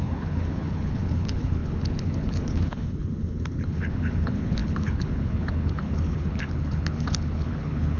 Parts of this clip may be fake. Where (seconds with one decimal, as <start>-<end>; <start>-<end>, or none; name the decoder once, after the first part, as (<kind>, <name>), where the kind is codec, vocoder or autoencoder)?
0.0-8.0 (codec, HILCodec)